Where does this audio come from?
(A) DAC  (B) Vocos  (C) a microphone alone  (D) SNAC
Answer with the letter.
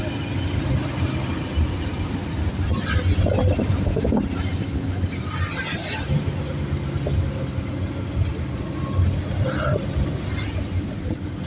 C